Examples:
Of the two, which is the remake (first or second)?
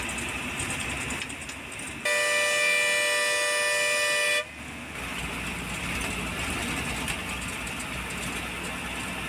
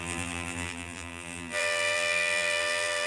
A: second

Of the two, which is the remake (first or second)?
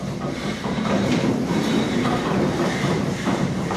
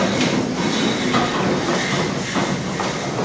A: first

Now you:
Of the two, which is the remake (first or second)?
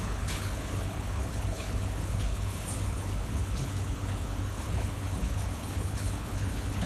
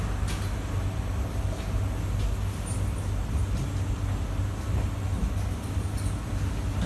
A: first